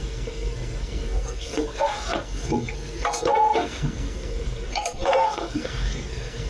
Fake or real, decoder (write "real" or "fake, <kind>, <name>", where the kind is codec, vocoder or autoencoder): fake, codec, SNAC